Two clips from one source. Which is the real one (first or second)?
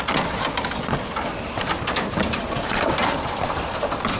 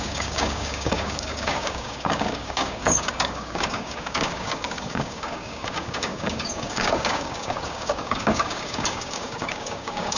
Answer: first